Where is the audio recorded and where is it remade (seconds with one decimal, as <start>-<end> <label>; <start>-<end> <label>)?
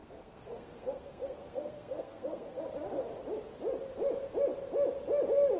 0.0-2.6 remade; 2.6-5.6 recorded